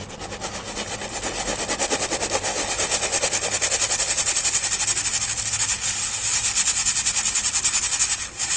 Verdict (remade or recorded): recorded